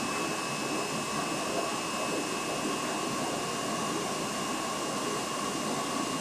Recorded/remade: recorded